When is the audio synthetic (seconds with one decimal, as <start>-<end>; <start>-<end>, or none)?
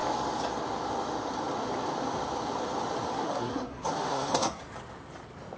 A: 3.1-4.6